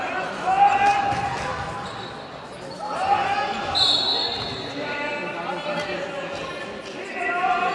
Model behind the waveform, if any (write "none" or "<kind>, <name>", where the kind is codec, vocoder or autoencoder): none